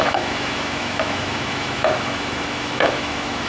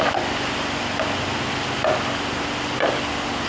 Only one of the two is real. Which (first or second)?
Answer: second